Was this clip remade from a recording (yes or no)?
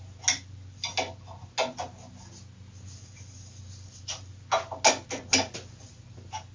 no